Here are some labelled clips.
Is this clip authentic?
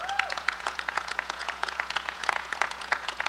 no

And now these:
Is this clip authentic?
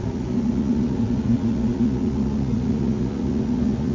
no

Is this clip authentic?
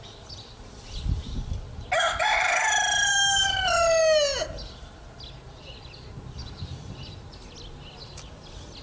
yes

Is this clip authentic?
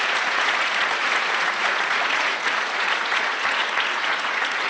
no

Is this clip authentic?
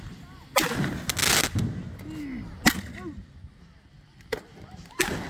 yes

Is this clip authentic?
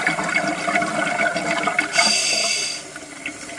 yes